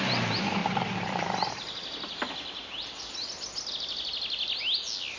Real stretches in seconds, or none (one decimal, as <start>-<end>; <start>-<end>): 0.0-5.2

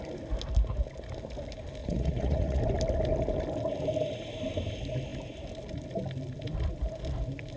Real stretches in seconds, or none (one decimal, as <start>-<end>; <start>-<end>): 0.0-1.8; 2.6-7.6

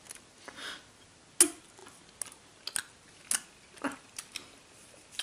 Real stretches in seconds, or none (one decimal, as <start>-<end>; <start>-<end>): 0.0-5.2

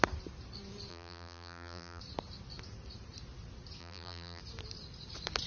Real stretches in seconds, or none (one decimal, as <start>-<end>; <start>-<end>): 0.0-0.9; 2.0-3.8; 4.4-5.5